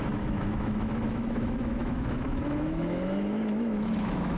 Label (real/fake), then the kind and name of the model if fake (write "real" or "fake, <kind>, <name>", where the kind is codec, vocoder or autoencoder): fake, autoencoder, DAC-VAE